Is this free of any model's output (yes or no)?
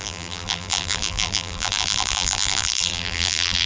no